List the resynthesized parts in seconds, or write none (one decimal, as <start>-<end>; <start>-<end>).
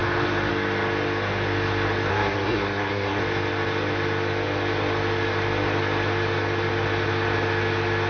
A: 2.1-3.2